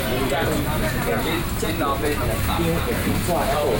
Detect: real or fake real